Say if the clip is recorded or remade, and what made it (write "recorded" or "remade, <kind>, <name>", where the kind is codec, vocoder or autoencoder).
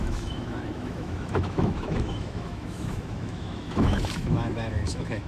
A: remade, autoencoder, DAC-VAE